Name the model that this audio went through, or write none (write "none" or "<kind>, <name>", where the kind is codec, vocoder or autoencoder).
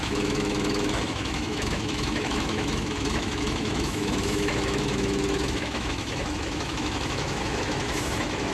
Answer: autoencoder, DAC-VAE